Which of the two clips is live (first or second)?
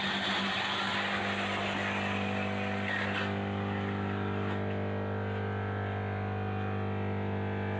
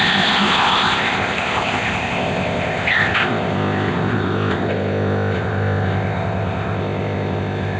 first